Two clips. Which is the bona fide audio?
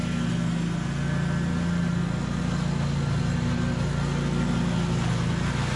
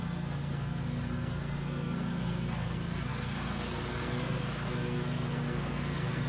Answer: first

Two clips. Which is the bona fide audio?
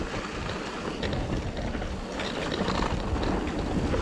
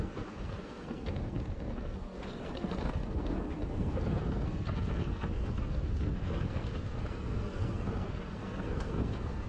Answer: first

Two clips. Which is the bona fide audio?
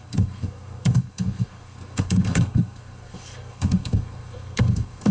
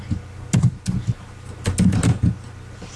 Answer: second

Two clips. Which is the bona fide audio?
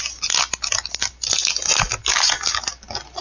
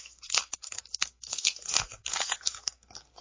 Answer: first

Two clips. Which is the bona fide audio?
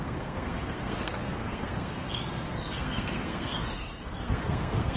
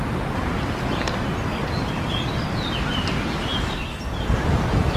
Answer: second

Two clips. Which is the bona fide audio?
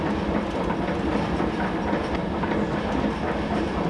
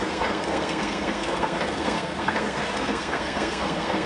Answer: first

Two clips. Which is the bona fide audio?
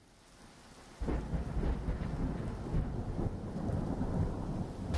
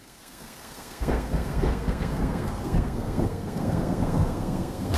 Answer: first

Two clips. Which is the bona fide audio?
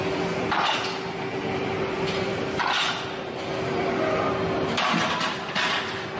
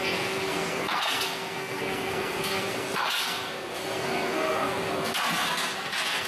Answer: first